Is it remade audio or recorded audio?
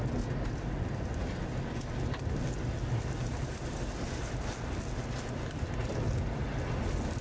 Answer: recorded